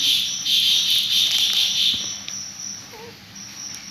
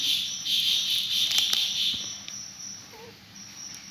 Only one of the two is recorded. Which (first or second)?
first